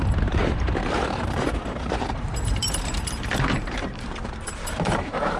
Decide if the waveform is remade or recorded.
remade